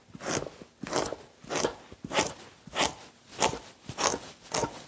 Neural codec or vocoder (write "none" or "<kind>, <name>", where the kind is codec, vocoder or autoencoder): none